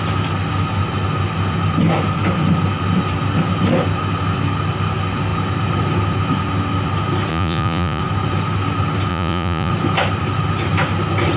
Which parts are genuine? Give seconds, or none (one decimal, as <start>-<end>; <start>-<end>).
0.0-7.3; 8.0-9.1; 9.7-11.4